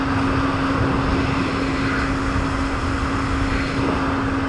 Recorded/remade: recorded